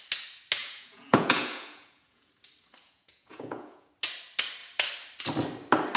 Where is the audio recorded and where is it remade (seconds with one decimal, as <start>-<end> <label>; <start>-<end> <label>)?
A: 0.0-0.6 recorded; 0.6-2.3 remade; 2.3-2.8 recorded; 2.8-3.9 remade; 3.9-6.0 recorded